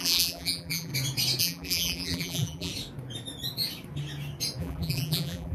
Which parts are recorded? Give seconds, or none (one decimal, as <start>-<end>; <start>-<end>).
0.9-1.4; 2.7-4.6